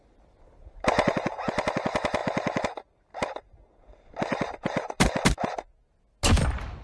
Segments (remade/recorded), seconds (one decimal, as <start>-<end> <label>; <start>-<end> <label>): 0.0-6.8 recorded

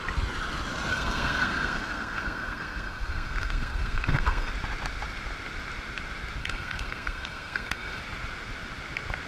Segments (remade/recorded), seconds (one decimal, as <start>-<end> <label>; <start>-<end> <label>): 0.0-0.9 recorded; 0.9-4.5 remade; 4.5-6.4 recorded; 6.4-8.0 remade; 8.0-9.3 recorded

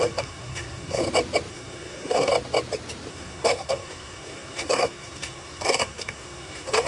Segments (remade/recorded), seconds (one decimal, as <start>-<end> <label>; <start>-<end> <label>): 0.0-1.0 remade; 1.0-1.5 recorded; 1.5-2.3 remade; 2.3-3.1 recorded; 3.1-6.9 remade

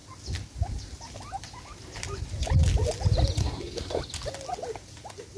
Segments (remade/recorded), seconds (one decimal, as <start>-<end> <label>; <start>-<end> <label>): 0.0-3.4 recorded; 3.4-4.0 remade; 4.0-5.4 recorded

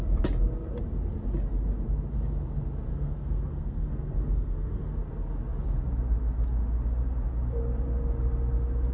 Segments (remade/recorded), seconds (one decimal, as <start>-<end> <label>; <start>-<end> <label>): 0.0-2.9 recorded; 2.9-4.9 remade; 4.9-8.9 recorded

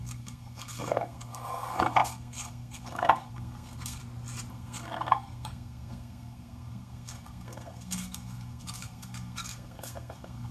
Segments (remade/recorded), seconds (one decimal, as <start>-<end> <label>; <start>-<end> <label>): 0.0-4.0 remade; 4.0-4.5 recorded; 4.5-10.5 remade